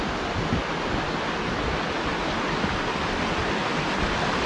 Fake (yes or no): no